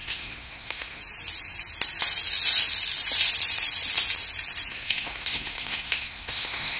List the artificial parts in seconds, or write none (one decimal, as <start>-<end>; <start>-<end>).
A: 0.0-1.0; 4.7-6.8